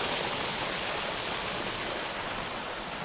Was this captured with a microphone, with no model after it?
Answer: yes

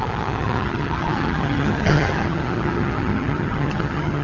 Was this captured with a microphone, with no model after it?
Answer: no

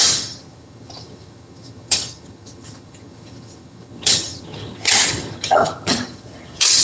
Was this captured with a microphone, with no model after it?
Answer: no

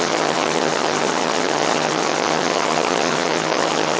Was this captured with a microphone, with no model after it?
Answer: no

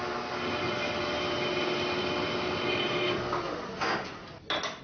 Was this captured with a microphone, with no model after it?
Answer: yes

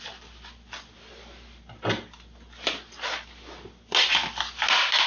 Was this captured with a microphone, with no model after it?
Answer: yes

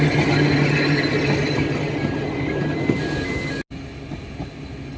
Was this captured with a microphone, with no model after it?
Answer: yes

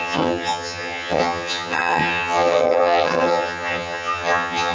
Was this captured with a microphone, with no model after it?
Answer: no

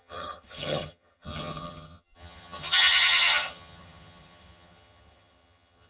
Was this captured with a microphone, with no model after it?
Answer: no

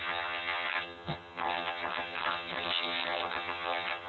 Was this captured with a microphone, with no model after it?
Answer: no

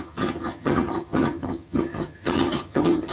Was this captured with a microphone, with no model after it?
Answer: no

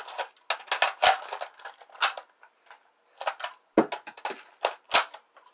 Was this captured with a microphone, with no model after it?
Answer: yes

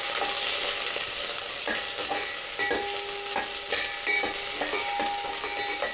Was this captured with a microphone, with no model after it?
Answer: yes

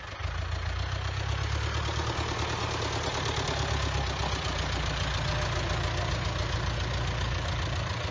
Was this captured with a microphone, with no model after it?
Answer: yes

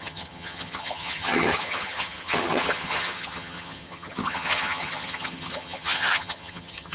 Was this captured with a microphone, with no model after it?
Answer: no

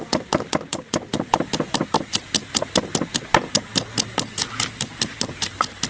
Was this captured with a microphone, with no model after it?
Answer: yes